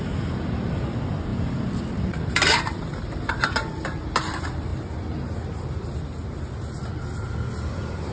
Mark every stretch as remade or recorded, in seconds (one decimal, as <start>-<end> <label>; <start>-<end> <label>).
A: 0.0-1.3 recorded; 1.3-2.8 remade; 2.8-8.1 recorded